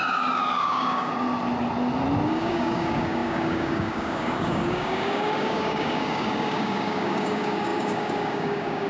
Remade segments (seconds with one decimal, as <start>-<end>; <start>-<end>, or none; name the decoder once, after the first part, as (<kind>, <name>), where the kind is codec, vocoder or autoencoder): 0.0-1.1 (codec, DAC); 2.3-8.9